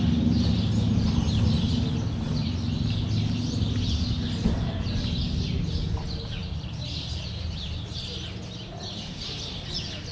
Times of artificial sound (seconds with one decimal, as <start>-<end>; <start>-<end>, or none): none